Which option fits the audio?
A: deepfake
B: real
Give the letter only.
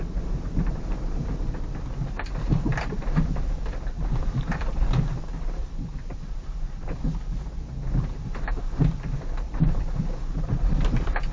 A